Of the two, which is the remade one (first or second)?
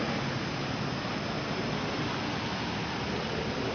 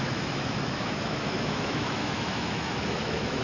second